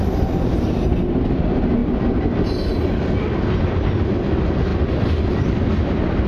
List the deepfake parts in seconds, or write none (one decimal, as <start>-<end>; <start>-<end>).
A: none